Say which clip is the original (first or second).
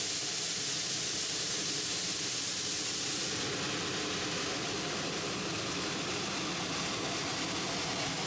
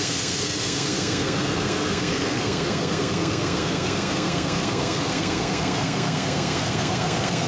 first